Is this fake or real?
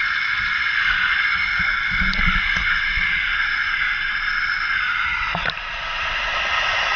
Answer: real